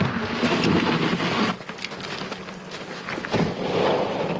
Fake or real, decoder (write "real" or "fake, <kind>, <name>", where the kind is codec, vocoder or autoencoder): real